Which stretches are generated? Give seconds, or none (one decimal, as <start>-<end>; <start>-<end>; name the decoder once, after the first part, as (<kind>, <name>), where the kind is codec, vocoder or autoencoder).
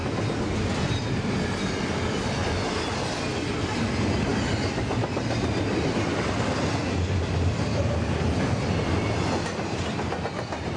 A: none